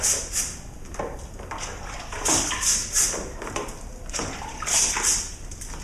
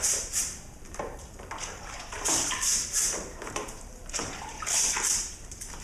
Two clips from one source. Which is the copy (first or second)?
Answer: second